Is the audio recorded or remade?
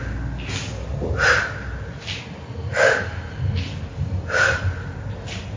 recorded